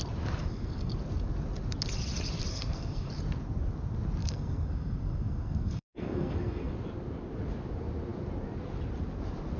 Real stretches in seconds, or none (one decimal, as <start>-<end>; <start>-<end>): 0.0-0.4; 0.9-2.5; 3.1-4.2; 6.7-9.6